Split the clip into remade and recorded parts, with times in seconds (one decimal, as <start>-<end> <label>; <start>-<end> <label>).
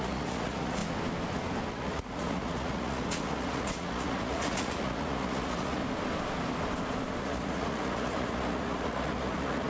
0.0-0.8 remade; 0.8-1.7 recorded; 1.7-5.8 remade; 5.8-7.2 recorded; 7.2-9.7 remade